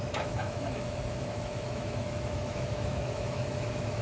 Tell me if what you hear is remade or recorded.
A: remade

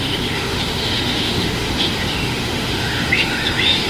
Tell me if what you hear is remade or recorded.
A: remade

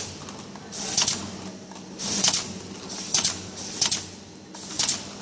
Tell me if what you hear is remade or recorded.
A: recorded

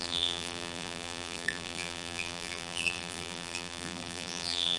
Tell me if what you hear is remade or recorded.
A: remade